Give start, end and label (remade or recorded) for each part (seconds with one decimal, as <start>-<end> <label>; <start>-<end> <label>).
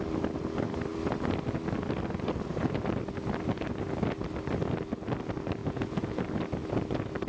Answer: 0.0-5.6 recorded; 5.6-6.2 remade; 6.2-7.3 recorded